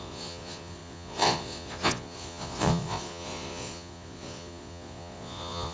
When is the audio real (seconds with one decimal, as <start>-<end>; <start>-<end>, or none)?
none